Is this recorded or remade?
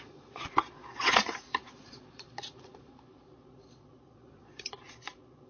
remade